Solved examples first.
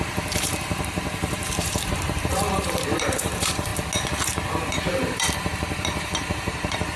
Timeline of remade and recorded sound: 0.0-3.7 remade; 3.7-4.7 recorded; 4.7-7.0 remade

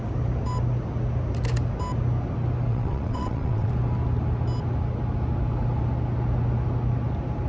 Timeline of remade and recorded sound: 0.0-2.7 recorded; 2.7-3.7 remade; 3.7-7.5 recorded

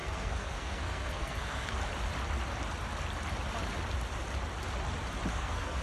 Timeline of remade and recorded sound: 0.0-1.8 remade; 1.8-5.3 recorded; 5.3-5.8 remade

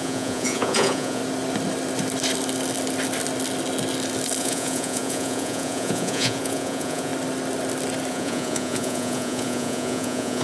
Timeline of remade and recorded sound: 0.0-1.2 remade; 1.2-4.4 recorded; 4.4-7.1 remade; 7.1-8.1 recorded; 8.1-10.4 remade

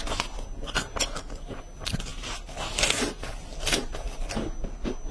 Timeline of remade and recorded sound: 0.0-5.1 recorded

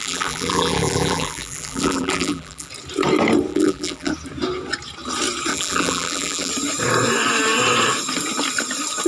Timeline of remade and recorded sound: 0.0-2.7 remade; 2.7-3.5 recorded; 3.5-4.1 remade; 4.1-5.5 recorded; 5.5-6.5 remade; 6.5-9.1 recorded

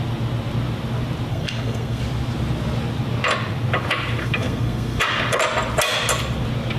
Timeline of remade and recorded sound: 0.0-1.3 recorded; 1.3-2.0 remade; 2.0-4.2 recorded; 4.2-5.0 remade; 5.0-6.8 recorded

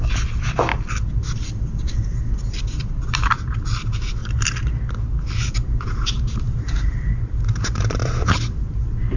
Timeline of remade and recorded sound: 0.0-0.7 remade; 0.7-2.9 recorded; 2.9-4.2 remade; 4.2-5.2 recorded; 5.2-9.2 remade